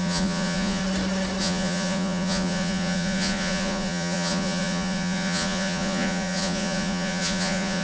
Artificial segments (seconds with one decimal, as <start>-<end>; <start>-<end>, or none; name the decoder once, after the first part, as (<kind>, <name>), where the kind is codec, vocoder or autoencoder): 0.0-0.8 (vocoder, Vocos); 1.4-7.8